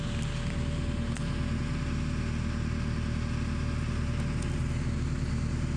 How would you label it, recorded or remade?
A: recorded